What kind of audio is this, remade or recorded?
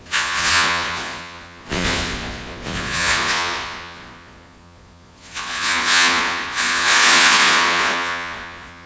remade